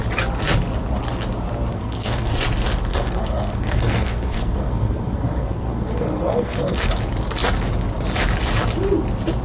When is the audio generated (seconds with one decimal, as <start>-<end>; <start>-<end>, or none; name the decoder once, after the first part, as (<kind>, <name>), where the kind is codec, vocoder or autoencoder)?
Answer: 1.7-2.3 (codec, SNAC); 2.9-6.9